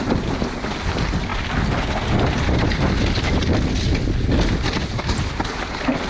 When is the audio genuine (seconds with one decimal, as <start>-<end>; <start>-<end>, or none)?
0.0-6.1